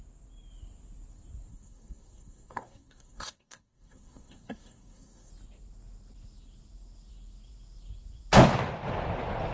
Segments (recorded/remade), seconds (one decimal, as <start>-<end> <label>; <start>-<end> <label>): 0.0-1.5 recorded; 1.5-5.3 remade; 5.3-9.5 recorded